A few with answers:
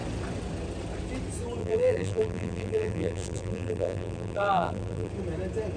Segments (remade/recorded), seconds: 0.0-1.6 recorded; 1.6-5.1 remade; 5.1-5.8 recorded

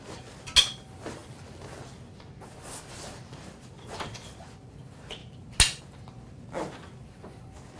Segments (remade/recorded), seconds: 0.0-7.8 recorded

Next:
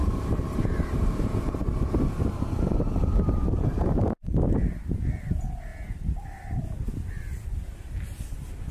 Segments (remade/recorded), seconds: 0.0-4.4 remade; 4.4-8.7 recorded

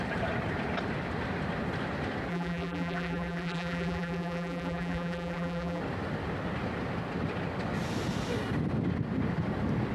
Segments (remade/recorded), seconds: 0.0-2.3 recorded; 2.3-5.8 remade; 5.8-9.9 recorded

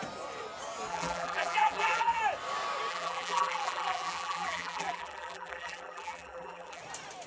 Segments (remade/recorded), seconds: 0.0-0.9 recorded; 0.9-2.2 remade; 2.2-2.9 recorded; 2.9-6.8 remade; 6.8-7.3 recorded

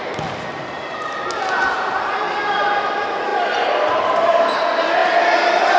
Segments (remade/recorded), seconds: 0.0-5.8 recorded

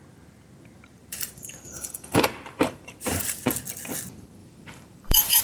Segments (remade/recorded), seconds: 0.0-1.0 recorded; 1.0-3.4 remade; 3.4-4.4 recorded; 4.4-5.4 remade

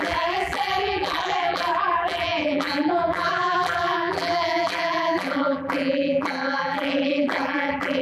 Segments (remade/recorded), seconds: 0.0-8.0 remade